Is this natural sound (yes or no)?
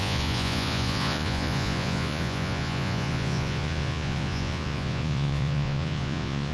no